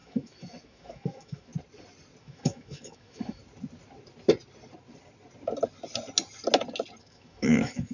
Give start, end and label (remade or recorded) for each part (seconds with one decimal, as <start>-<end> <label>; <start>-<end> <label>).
0.0-1.5 remade; 1.5-2.2 recorded; 2.2-3.4 remade; 3.4-7.0 recorded; 7.0-7.9 remade